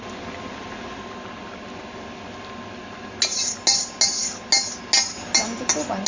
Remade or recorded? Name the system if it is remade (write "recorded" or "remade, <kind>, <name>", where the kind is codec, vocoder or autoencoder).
recorded